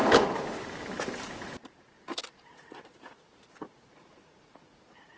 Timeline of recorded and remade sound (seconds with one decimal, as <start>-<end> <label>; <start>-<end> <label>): 0.0-2.0 recorded; 2.0-5.2 remade